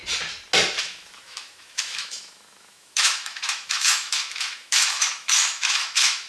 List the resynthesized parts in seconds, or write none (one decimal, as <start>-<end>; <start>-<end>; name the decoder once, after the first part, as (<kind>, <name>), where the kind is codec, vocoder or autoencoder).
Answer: 0.8-6.3 (autoencoder, DAC-VAE)